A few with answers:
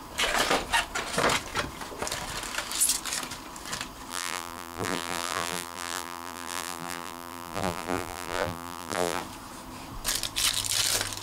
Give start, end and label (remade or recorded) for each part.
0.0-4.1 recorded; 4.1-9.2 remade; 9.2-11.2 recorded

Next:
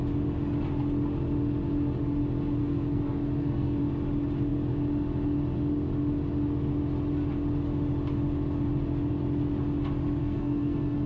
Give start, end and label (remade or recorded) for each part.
0.0-2.6 recorded; 2.6-3.8 remade; 3.8-10.2 recorded; 10.2-11.1 remade

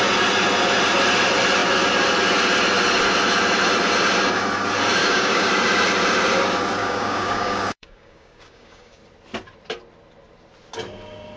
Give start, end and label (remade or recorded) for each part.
0.0-5.0 recorded; 5.0-5.5 remade; 5.5-6.8 recorded; 6.8-9.0 remade; 9.0-11.4 recorded

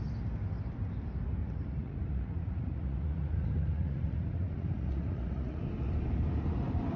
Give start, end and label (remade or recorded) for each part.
0.0-1.4 recorded; 1.4-5.6 remade; 5.6-7.0 recorded

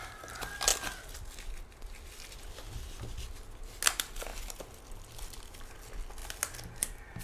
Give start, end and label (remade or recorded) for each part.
0.0-7.2 recorded

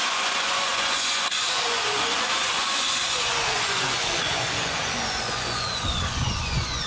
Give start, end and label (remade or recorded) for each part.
0.0-6.9 remade